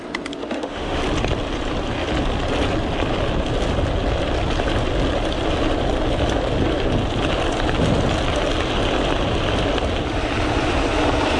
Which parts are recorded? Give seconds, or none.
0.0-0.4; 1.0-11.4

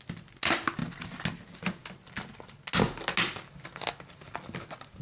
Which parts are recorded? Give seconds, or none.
0.0-5.0